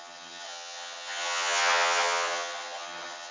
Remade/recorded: remade